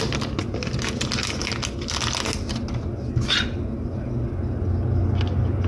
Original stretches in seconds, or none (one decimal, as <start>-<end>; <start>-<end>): 0.0-5.7

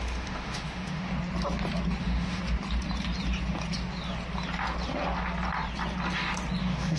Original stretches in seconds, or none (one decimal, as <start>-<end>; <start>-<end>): 1.1-2.0; 2.4-6.6

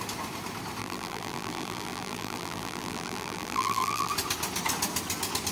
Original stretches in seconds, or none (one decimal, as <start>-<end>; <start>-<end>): 0.0-0.8; 4.1-5.5

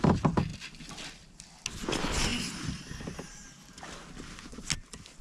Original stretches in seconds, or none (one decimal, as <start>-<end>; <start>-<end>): 0.0-5.2